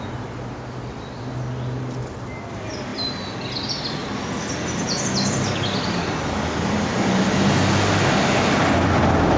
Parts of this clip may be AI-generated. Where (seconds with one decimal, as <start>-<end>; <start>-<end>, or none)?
none